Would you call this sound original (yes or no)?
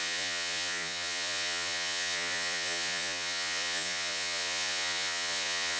no